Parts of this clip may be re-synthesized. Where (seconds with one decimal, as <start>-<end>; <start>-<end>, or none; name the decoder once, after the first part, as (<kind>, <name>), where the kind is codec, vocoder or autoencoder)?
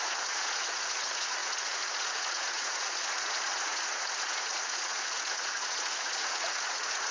0.0-7.1 (vocoder, Vocos)